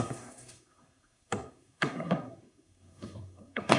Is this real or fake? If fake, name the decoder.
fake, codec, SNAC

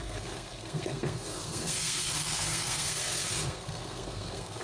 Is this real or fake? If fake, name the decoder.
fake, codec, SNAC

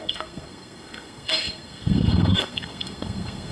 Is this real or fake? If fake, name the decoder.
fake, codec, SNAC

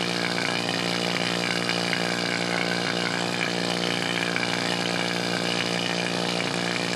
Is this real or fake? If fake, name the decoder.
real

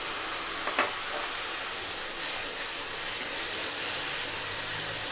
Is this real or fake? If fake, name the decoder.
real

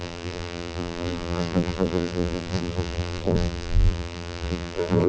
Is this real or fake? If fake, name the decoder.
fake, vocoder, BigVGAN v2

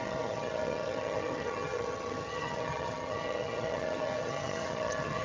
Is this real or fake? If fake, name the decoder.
fake, vocoder, HiFi-GAN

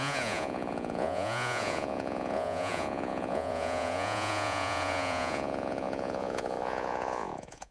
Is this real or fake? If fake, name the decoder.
fake, vocoder, Vocos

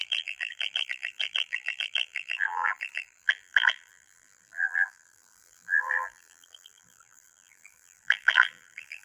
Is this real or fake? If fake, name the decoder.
fake, vocoder, BigVGAN v2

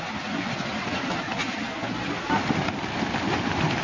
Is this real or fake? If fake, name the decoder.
real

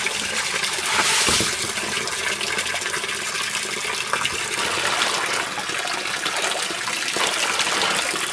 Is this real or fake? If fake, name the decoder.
real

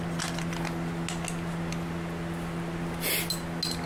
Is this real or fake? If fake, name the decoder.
real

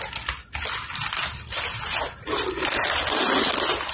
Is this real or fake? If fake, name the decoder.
real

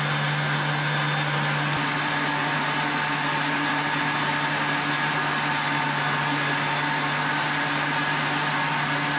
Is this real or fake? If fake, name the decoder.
real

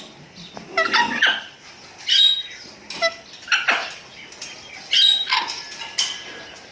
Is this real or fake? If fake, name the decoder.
real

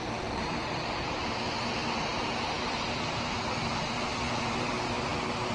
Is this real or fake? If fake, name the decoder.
real